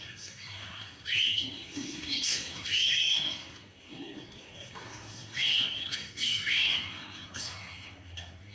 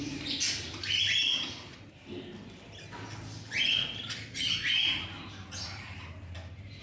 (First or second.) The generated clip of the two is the first